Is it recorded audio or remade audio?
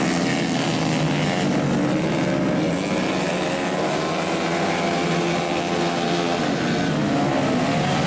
recorded